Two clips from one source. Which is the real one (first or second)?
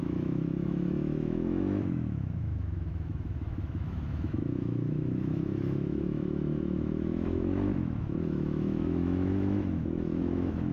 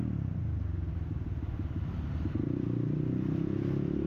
second